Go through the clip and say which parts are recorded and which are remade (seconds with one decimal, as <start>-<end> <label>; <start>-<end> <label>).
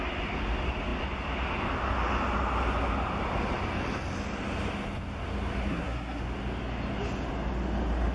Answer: 0.0-5.7 recorded; 5.7-6.2 remade; 6.2-8.1 recorded